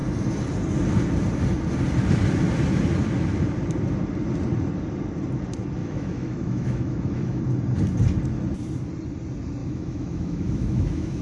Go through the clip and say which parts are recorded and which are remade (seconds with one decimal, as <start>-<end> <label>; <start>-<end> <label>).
0.0-5.8 recorded; 5.8-7.4 remade; 7.4-9.6 recorded; 9.6-11.2 remade